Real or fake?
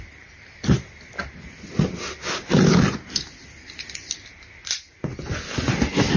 real